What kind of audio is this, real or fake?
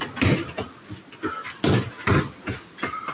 real